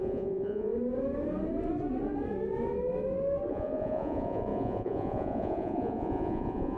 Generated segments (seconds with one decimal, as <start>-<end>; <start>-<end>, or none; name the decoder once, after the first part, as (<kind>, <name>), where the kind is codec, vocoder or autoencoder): 0.0-0.7 (vocoder, Vocos); 3.5-6.8